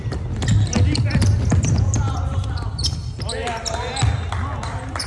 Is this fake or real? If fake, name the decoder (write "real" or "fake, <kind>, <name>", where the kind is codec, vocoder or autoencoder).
real